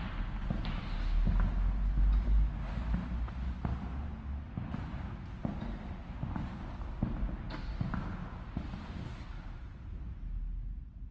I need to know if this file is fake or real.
real